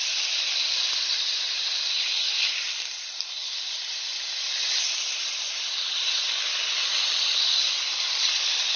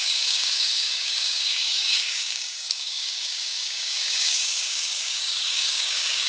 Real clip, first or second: first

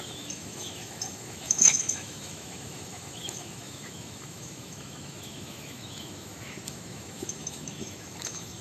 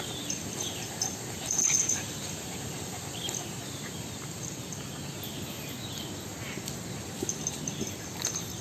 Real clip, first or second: second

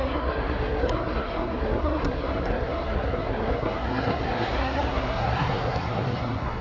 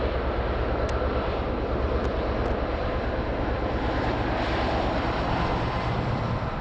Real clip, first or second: second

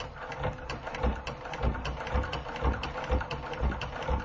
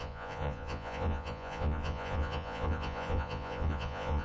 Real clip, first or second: first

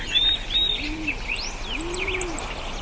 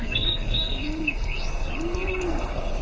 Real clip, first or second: first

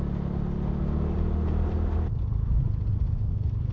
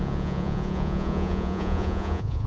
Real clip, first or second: first